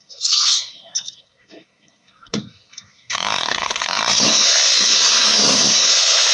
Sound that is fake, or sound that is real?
fake